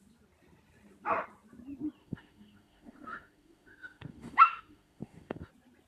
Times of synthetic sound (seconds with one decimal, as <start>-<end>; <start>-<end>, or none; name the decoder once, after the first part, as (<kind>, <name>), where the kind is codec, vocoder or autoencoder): 2.0-5.5 (autoencoder, DAC-VAE)